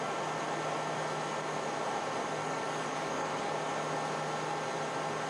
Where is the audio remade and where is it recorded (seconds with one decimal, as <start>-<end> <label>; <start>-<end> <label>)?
0.0-2.4 recorded; 2.4-3.5 remade; 3.5-5.3 recorded